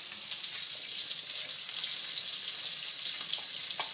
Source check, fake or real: real